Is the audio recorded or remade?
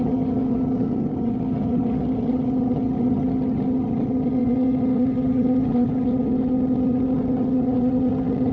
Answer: remade